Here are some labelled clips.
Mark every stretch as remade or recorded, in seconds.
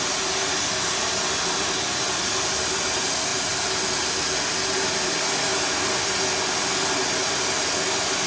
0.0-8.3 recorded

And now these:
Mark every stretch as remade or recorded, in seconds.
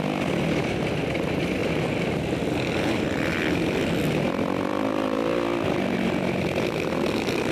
0.0-7.5 recorded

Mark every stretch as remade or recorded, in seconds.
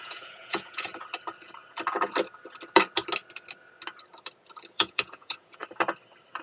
0.0-0.9 remade; 0.9-4.7 recorded; 4.7-5.6 remade; 5.6-6.4 recorded